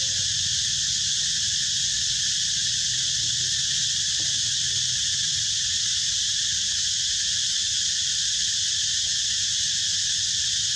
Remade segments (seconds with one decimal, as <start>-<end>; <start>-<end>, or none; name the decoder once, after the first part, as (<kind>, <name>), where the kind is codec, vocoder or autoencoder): none